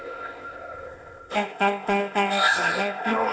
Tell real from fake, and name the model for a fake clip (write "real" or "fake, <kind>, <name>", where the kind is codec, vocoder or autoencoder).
fake, codec, ZipCodec